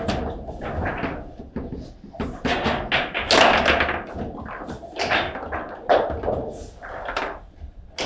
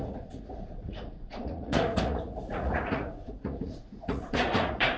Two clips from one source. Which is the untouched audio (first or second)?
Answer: first